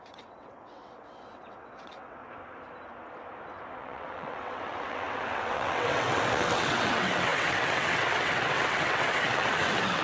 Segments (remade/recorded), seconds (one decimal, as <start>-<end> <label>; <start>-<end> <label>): 0.0-2.2 remade; 2.2-3.8 recorded; 3.8-10.0 remade